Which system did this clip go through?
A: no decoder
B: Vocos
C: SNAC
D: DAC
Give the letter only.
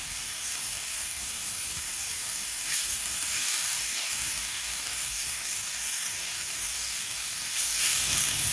D